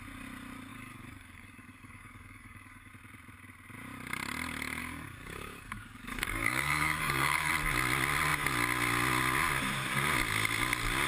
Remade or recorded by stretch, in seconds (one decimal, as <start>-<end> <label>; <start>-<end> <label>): 0.0-0.7 recorded; 0.7-2.9 remade; 2.9-4.8 recorded; 4.8-7.5 remade; 7.5-11.1 recorded